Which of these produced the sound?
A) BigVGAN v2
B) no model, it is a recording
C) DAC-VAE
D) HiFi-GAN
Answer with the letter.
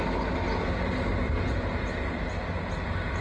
B